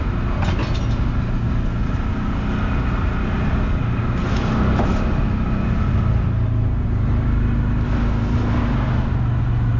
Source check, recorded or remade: recorded